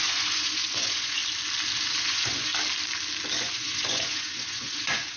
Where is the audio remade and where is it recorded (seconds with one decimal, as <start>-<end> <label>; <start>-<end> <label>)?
0.0-1.2 remade; 1.2-2.0 recorded; 2.0-2.5 remade; 2.5-3.4 recorded; 3.4-5.2 remade